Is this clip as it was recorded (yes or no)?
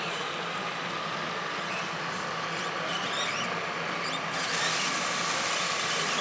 yes